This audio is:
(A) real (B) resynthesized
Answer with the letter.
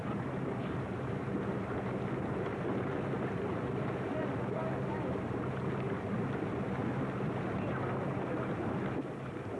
A